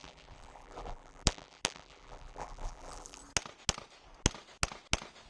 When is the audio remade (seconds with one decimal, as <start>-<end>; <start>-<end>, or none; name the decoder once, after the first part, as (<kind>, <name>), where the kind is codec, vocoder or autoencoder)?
0.0-3.2 (vocoder, BigVGAN v2)